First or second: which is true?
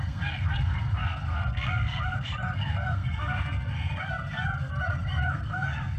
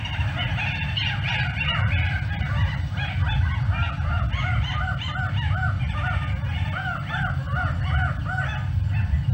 second